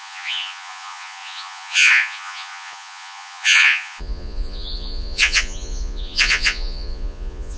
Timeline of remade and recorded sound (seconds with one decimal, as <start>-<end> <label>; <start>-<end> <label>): 0.0-7.6 remade